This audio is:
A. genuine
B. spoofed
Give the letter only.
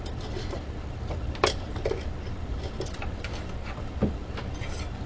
A